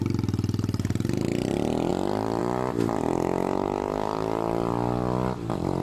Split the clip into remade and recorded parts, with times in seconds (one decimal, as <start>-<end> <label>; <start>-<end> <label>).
0.0-1.9 recorded; 1.9-2.4 remade; 2.4-5.8 recorded